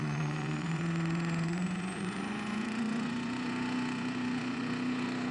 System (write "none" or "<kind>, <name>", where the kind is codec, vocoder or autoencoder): vocoder, Vocos